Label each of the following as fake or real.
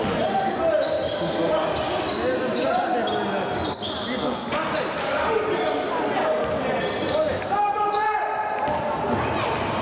real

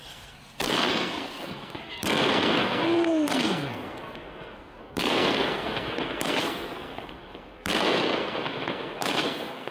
fake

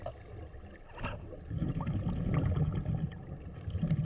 real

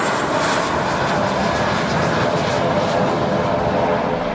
real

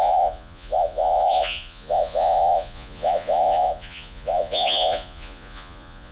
fake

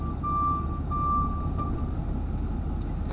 real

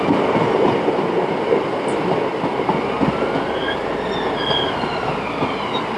real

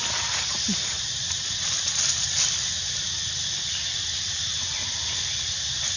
real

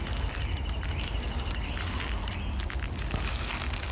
real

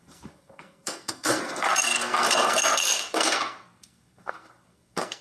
fake